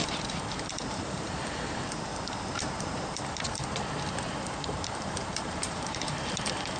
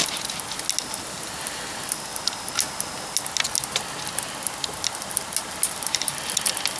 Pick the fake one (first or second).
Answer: first